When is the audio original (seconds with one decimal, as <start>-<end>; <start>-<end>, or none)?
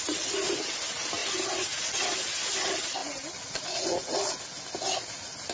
0.0-5.5